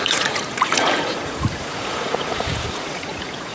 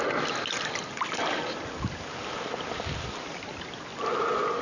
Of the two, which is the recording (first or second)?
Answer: second